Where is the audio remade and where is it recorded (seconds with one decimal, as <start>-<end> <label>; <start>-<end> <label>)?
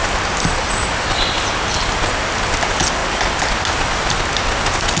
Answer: 0.0-5.0 recorded